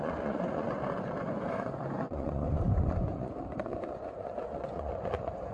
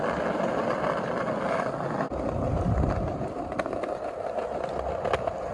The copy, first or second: first